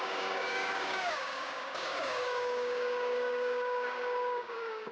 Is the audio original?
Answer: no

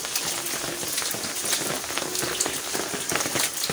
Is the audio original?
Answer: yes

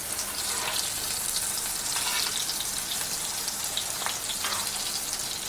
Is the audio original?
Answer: yes